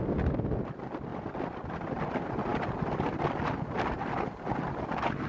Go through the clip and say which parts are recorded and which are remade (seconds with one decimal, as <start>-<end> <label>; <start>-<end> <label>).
0.0-5.3 recorded